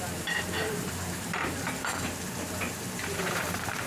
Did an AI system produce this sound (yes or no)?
yes